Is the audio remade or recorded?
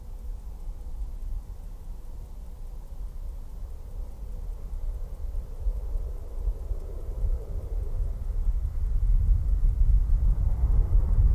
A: recorded